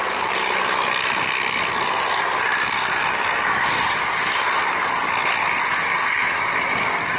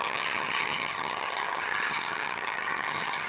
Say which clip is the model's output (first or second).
second